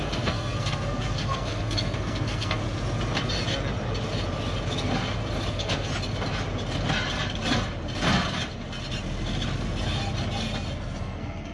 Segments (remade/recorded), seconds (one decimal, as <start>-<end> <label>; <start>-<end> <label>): 0.0-2.6 remade; 2.6-5.5 recorded; 5.5-5.9 remade; 5.9-11.0 recorded; 11.0-11.5 remade